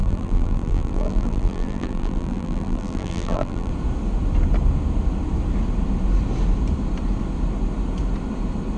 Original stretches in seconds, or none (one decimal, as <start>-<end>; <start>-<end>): 3.7-8.8